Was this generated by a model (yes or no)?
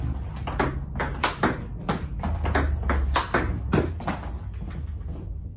no